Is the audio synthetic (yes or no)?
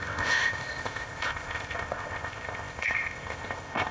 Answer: yes